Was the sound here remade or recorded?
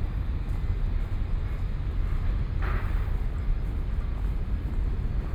recorded